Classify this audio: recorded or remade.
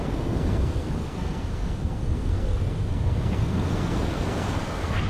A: remade